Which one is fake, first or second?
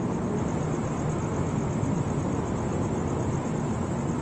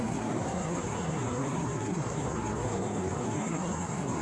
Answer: second